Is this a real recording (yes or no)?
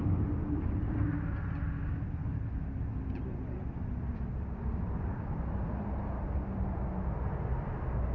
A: yes